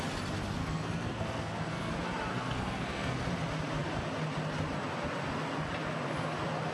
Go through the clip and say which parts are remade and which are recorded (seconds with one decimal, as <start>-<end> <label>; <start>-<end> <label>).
0.0-0.6 recorded; 0.6-1.9 remade; 1.9-2.3 recorded; 2.3-3.2 remade; 3.2-6.7 recorded